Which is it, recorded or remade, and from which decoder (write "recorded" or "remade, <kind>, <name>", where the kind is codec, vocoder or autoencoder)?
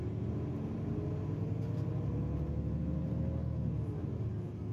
recorded